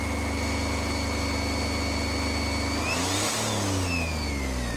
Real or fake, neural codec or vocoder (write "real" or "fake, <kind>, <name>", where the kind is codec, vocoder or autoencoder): real